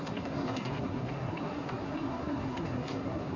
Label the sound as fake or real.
fake